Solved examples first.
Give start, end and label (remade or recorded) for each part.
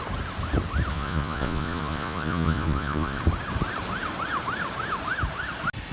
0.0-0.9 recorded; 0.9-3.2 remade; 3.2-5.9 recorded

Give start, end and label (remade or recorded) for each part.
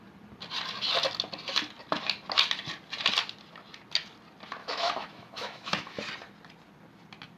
0.0-4.6 recorded; 4.6-6.0 remade; 6.0-7.4 recorded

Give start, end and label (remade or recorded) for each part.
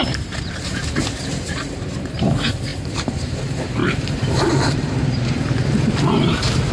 0.0-6.7 remade